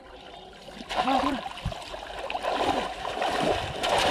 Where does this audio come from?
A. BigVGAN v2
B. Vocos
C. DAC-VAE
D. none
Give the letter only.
A